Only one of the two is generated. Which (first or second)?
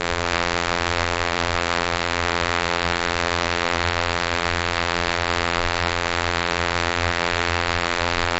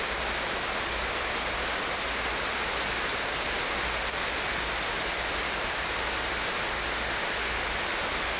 first